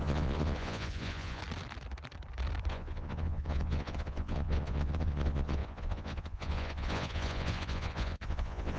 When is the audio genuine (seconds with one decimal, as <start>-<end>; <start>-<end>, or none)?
1.4-2.7